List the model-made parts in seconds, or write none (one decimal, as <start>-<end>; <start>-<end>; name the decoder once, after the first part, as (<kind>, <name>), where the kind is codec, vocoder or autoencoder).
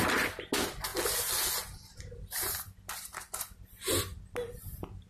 none